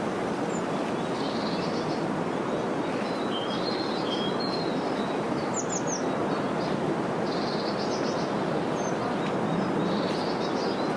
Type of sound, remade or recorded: recorded